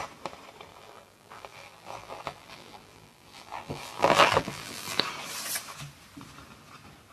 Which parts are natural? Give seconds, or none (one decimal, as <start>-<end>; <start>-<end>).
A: 0.0-0.7; 5.0-7.1